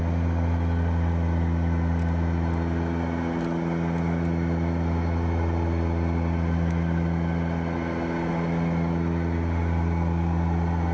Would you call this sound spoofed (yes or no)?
no